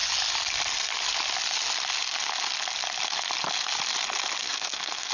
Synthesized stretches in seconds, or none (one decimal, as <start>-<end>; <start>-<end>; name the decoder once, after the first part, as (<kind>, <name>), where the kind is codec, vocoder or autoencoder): 4.4-5.1 (codec, SNAC)